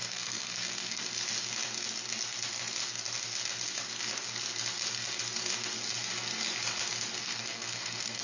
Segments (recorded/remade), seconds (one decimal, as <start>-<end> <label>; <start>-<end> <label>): 0.0-1.0 remade; 1.0-7.2 recorded; 7.2-8.2 remade